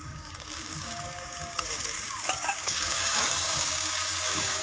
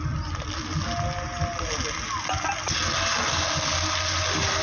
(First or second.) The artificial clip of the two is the first